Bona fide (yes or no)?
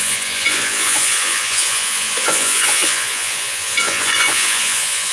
no